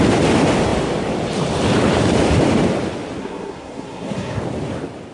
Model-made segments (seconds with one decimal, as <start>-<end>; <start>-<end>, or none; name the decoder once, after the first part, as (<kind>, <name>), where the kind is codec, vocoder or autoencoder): 3.2-4.4 (codec, SNAC)